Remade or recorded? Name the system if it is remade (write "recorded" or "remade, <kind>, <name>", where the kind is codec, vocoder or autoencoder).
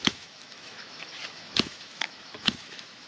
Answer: remade, autoencoder, DAC-VAE